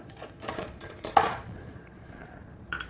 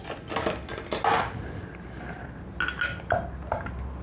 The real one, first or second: second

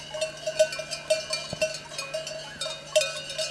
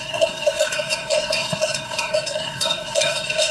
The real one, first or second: first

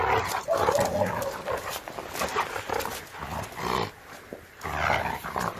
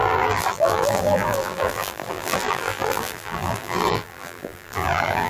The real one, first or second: first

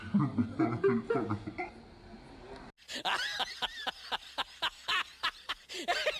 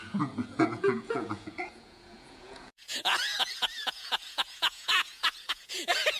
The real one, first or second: first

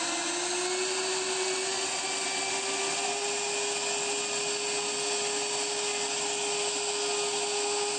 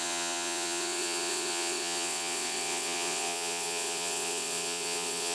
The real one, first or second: first